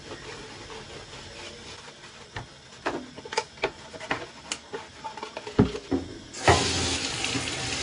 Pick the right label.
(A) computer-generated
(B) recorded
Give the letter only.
B